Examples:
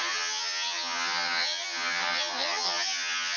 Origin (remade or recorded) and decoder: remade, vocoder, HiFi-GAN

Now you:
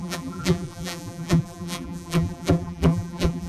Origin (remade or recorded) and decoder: remade, vocoder, BigVGAN v2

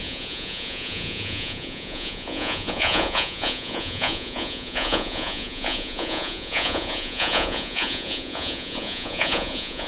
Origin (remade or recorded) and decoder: remade, vocoder, Vocos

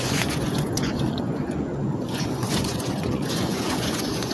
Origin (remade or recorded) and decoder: remade, vocoder, Vocos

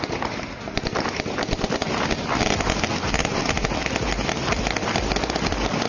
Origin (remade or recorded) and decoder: recorded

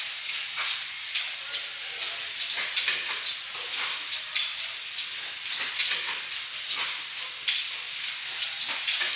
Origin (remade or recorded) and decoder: recorded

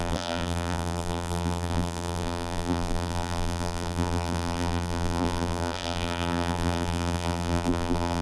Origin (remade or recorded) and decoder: remade, vocoder, BigVGAN v2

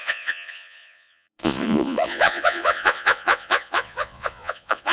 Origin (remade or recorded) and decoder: remade, vocoder, Vocos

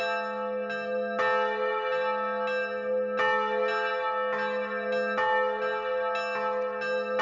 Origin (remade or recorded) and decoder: recorded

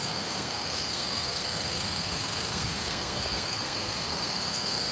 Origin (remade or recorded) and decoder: remade, codec, SNAC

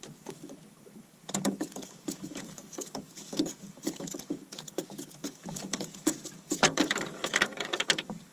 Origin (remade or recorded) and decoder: remade, codec, DAC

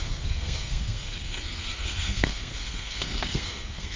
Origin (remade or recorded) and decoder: remade, codec, SNAC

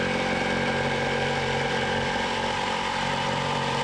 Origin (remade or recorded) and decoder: remade, vocoder, BigVGAN v2